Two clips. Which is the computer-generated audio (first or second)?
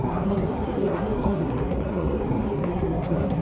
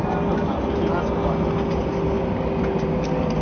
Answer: first